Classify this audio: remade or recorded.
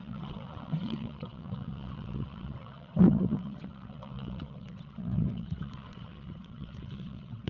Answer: remade